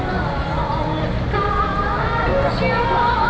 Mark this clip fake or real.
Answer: real